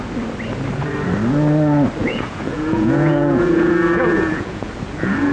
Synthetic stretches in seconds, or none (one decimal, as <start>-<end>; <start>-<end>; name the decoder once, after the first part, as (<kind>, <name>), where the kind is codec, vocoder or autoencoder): 2.0-4.7 (vocoder, Vocos)